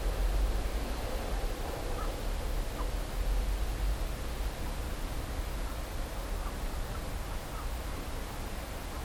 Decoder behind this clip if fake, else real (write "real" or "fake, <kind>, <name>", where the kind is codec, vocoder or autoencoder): real